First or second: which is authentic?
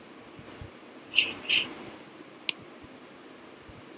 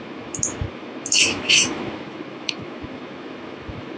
first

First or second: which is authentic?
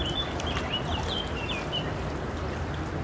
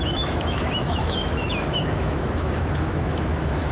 first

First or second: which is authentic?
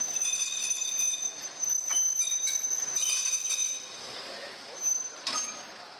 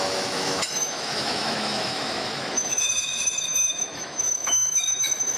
first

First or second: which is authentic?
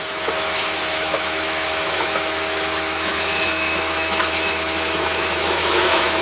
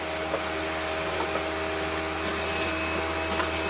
second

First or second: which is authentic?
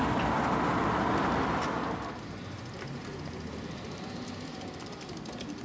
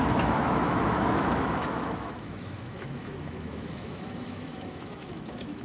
first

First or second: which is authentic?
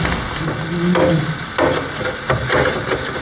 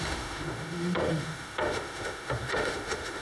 first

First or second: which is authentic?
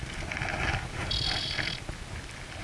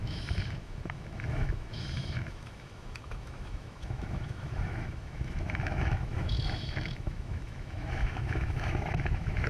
first